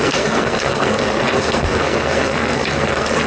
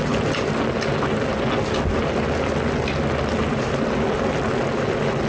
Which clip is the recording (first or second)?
second